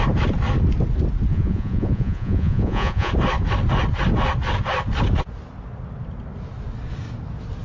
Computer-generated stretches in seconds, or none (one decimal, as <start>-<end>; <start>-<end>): 1.3-3.1